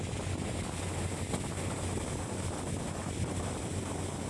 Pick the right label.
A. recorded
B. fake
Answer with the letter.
A